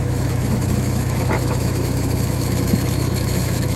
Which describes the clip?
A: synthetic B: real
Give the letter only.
A